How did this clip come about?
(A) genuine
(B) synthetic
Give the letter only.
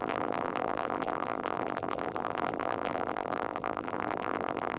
B